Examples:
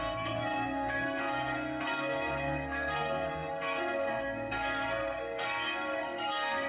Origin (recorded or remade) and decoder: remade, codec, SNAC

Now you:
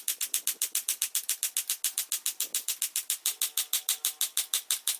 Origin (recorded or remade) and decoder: recorded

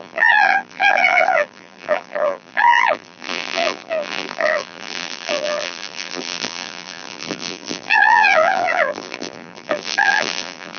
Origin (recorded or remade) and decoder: remade, vocoder, BigVGAN v2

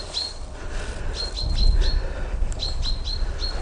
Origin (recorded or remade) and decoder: recorded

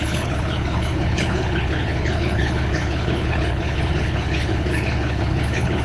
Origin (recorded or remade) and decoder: remade, codec, HILCodec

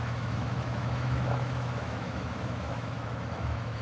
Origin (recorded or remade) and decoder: remade, autoencoder, DAC-VAE